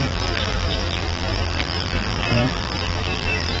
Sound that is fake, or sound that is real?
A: fake